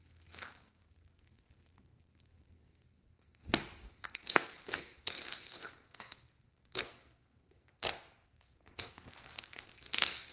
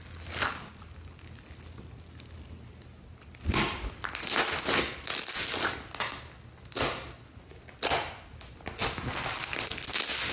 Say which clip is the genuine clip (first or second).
second